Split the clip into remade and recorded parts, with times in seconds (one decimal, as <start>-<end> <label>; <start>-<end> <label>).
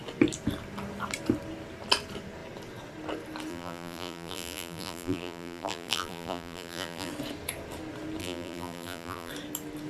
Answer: 0.0-3.5 recorded; 3.5-7.1 remade; 7.1-8.2 recorded; 8.2-9.3 remade; 9.3-9.9 recorded